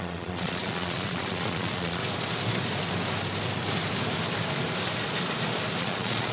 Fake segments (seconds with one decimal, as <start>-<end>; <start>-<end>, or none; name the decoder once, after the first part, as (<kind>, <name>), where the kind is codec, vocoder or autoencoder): 0.0-2.0 (vocoder, Vocos); 5.8-6.3